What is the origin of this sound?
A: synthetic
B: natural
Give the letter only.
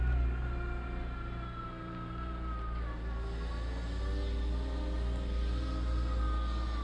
B